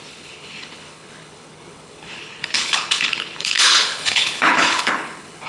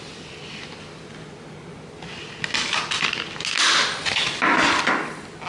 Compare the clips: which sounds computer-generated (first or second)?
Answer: first